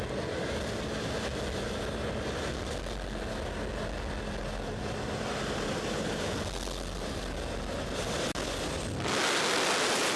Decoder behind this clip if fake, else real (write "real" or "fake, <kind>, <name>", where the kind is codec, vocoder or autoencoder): real